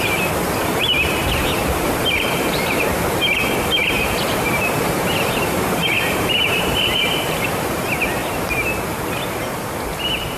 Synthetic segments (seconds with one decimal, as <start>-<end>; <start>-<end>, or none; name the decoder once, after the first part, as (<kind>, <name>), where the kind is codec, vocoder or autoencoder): 0.6-3.0 (vocoder, BigVGAN v2); 3.8-7.8